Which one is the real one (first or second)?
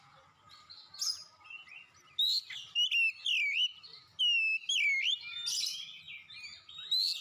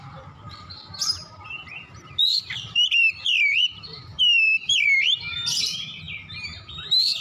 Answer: first